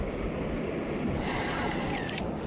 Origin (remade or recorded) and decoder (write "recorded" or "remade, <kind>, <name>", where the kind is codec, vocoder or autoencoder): recorded